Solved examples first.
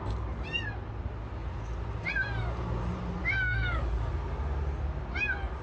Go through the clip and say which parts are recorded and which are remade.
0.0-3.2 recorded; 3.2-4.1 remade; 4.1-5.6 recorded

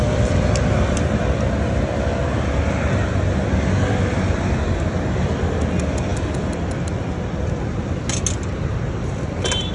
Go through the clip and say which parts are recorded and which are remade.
0.0-9.7 recorded

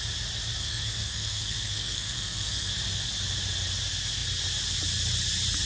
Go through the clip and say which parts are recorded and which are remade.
0.0-0.6 recorded; 0.6-2.7 remade; 2.7-5.7 recorded

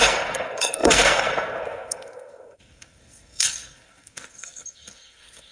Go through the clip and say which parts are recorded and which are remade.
0.0-5.5 remade

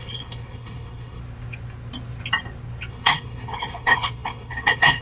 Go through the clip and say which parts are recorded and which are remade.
0.0-1.2 remade; 1.2-2.9 recorded; 2.9-5.0 remade

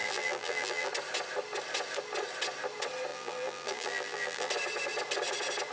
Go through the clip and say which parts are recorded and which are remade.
0.0-0.9 remade; 0.9-3.1 recorded; 3.1-4.5 remade; 4.5-5.7 recorded